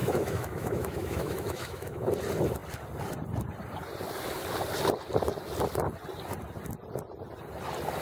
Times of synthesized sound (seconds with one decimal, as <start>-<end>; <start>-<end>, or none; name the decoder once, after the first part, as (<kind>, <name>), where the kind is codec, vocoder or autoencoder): 0.0-2.1 (autoencoder, DAC-VAE)